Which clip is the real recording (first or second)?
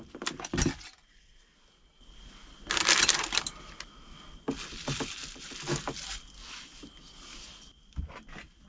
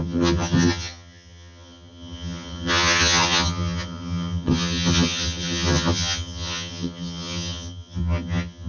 first